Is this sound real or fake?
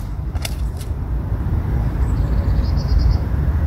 fake